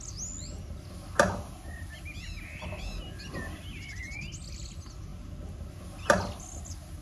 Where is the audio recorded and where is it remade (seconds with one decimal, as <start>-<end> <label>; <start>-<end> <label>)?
0.0-7.0 recorded